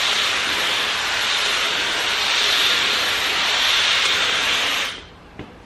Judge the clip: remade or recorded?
remade